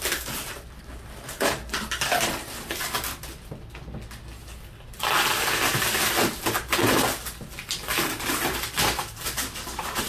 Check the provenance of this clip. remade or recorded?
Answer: recorded